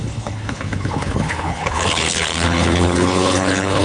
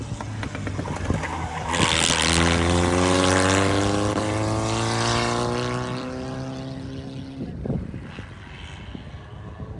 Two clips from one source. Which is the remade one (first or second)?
first